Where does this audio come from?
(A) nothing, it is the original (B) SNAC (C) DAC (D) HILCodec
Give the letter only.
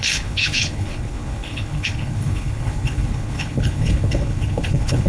D